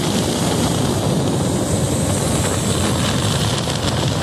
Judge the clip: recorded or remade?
recorded